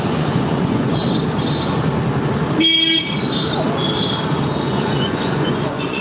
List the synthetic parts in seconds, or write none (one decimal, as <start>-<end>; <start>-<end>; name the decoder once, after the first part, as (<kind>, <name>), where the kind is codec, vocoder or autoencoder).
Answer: 0.0-1.0 (vocoder, Vocos); 4.6-6.0